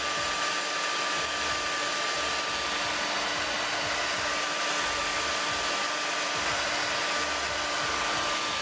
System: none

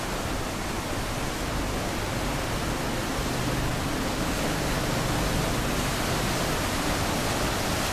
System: none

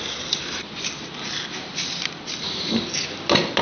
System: none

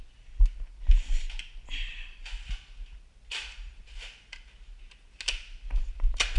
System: none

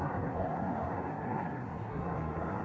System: codec, SNAC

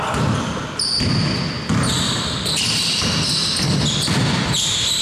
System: none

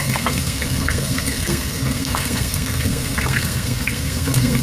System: codec, SNAC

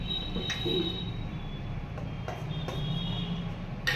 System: none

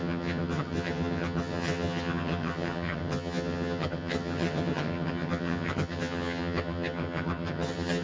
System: vocoder, HiFi-GAN